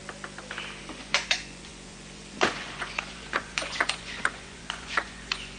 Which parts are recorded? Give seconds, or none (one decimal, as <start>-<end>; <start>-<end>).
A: 0.0-0.8